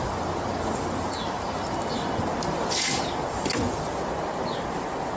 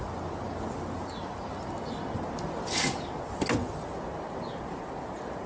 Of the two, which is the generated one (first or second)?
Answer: first